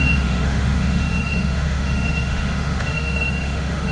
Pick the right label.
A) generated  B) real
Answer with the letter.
A